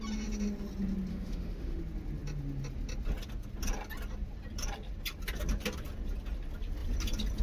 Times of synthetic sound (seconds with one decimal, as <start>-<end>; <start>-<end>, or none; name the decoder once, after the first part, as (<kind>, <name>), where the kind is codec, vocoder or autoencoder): 1.1-1.8 (autoencoder, DAC-VAE)